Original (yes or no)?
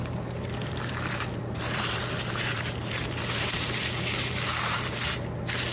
no